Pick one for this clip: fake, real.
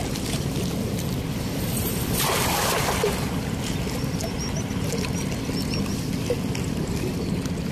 real